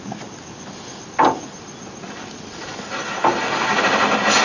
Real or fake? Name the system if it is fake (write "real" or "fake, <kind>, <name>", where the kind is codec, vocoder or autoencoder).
real